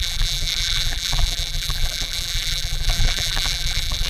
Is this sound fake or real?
fake